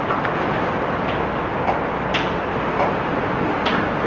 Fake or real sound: real